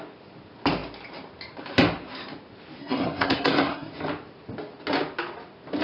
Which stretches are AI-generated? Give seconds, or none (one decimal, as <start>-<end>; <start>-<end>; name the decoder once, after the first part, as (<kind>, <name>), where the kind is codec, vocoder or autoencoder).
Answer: 2.8-3.9 (codec, SNAC)

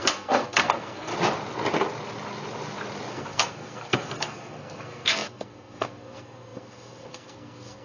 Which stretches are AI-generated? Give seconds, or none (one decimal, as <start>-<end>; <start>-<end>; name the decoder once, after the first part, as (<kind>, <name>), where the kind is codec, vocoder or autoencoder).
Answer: 0.0-1.1 (codec, SNAC); 3.1-7.8

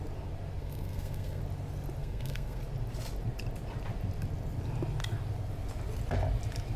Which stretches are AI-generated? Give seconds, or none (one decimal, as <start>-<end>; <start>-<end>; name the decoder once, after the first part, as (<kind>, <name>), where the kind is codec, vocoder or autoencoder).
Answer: 0.6-1.4 (codec, SNAC); 2.0-2.6

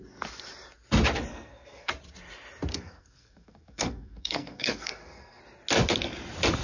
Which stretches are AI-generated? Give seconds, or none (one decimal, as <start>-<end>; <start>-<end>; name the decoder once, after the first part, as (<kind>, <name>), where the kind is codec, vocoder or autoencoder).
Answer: 1.3-1.9 (codec, SNAC); 2.7-5.4

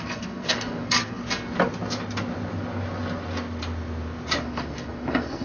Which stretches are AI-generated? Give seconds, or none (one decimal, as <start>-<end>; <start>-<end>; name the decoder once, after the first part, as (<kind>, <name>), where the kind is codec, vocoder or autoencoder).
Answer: 0.0-1.2 (codec, SNAC); 4.4-5.4